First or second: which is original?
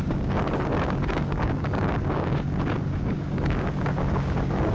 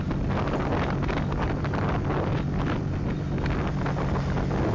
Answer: second